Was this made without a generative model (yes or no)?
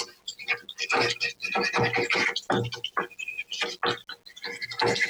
yes